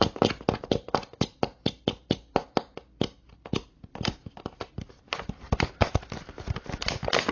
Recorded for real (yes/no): yes